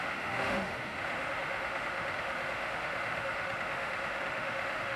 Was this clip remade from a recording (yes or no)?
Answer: yes